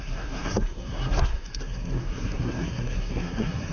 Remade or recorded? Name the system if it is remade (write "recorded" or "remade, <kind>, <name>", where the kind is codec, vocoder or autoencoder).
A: remade, codec, SNAC